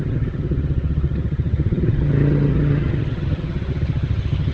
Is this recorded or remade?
remade